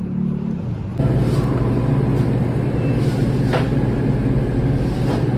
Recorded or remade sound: recorded